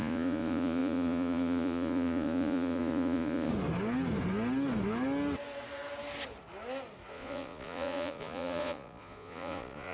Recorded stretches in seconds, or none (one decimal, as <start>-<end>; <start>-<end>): 3.5-7.1